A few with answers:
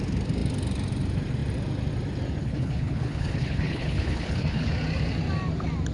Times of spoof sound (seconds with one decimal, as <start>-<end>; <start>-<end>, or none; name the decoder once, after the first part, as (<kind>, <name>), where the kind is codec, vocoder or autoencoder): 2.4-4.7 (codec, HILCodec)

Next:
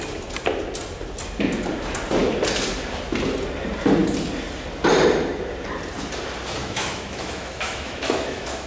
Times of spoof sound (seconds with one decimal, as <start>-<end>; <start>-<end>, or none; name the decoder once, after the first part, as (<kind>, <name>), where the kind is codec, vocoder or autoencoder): 6.6-8.7 (autoencoder, DAC-VAE)

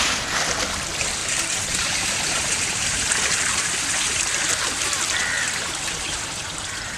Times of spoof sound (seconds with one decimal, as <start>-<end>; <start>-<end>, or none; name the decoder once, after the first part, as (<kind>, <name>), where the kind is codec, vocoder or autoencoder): 1.2-1.8 (vocoder, BigVGAN v2); 4.5-5.0

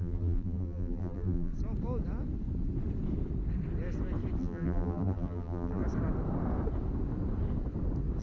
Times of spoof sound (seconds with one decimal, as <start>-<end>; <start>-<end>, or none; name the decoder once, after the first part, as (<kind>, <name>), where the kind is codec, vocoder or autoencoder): 0.0-1.5 (vocoder, BigVGAN v2); 4.4-5.8

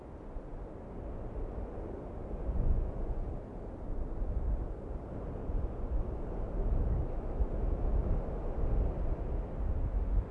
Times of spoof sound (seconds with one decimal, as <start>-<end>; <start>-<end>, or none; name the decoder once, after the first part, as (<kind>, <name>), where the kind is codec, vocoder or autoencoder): 2.4-3.3 (vocoder, Vocos); 5.4-6.0

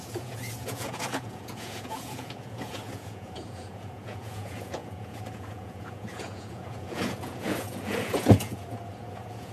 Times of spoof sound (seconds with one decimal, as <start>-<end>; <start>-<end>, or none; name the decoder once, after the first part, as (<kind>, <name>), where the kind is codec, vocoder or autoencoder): 0.0-9.5 (vocoder, Vocos)

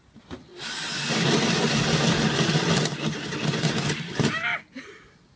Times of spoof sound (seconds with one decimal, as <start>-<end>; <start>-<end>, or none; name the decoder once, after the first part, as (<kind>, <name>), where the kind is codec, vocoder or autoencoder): none

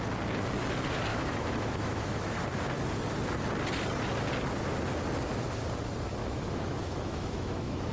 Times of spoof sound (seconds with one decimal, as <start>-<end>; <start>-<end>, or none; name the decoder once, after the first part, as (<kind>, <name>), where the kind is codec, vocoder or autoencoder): 1.1-2.4 (autoencoder, DAC-VAE); 6.2-7.9